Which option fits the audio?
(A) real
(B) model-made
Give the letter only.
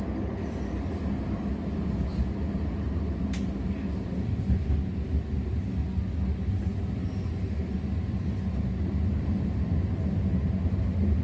A